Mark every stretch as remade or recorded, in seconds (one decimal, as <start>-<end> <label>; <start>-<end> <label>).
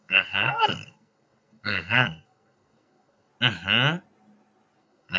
0.0-3.3 remade; 3.3-4.8 recorded; 4.8-5.2 remade